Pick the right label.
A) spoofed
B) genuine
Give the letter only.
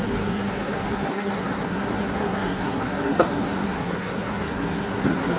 A